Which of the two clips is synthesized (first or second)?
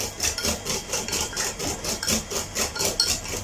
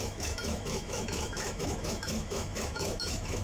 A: second